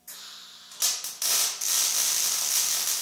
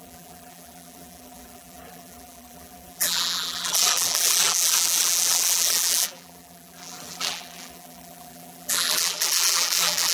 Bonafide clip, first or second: first